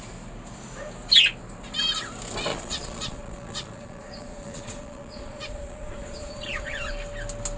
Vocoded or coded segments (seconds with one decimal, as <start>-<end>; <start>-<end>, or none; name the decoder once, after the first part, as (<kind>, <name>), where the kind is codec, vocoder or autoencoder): 2.5-6.9 (vocoder, Vocos)